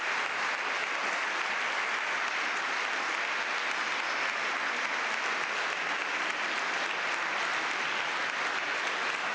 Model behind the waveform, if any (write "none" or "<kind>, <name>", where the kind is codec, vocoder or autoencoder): none